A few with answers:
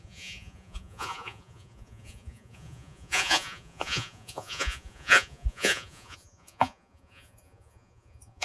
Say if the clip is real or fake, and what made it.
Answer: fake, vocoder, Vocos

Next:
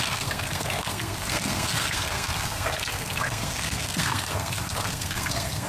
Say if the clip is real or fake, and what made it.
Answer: fake, codec, SNAC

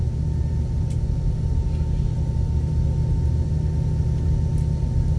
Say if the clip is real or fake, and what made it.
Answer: real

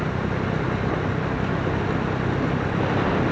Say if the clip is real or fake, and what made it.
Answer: real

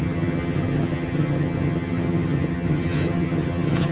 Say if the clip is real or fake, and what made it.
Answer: fake, vocoder, HiFi-GAN